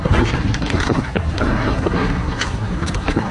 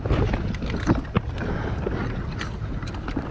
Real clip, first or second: second